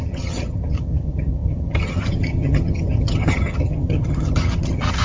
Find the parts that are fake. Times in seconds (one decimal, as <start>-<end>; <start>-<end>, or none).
0.0-5.0